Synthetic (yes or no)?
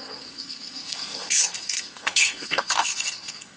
yes